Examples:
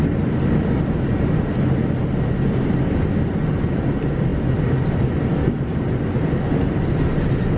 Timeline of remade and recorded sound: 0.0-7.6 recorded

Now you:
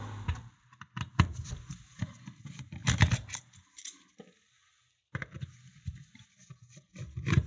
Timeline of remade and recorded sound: 0.0-7.5 recorded

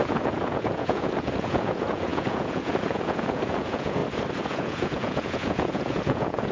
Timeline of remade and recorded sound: 0.0-4.0 remade; 4.0-4.5 recorded; 4.5-6.5 remade